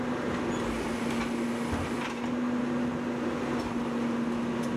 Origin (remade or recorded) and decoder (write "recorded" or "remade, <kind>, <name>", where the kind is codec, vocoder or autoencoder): recorded